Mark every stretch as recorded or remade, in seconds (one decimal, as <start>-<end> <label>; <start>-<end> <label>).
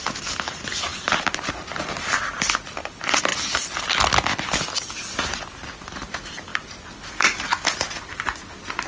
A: 0.0-8.9 recorded